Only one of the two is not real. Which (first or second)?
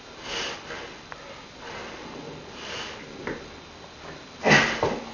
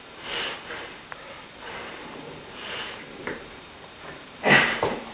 second